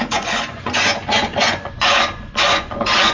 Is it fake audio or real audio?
fake